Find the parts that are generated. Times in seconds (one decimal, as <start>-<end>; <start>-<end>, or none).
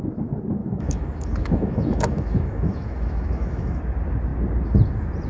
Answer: 0.6-3.8